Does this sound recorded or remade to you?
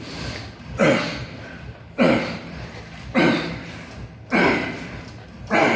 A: recorded